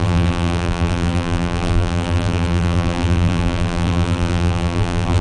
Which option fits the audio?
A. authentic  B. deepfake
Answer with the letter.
B